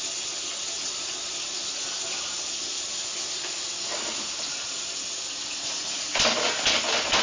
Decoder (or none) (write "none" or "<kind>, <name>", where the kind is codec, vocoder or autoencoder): none